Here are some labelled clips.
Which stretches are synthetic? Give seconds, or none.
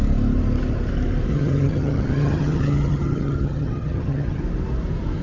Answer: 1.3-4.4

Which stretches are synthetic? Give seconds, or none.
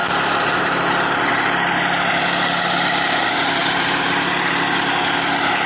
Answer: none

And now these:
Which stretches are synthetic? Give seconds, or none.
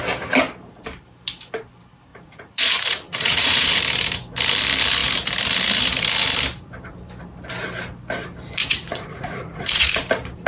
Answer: 2.1-3.8; 8.6-9.9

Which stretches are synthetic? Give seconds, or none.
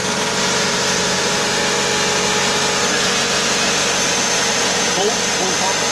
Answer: 0.0-1.6; 4.0-5.9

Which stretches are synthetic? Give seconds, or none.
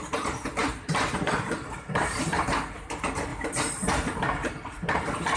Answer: 0.6-2.5; 3.3-3.9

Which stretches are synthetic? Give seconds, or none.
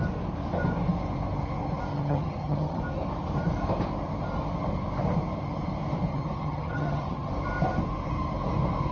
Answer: 1.9-2.8; 6.1-7.3